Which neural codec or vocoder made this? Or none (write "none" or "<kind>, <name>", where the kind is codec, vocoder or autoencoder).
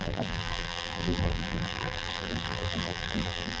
vocoder, BigVGAN v2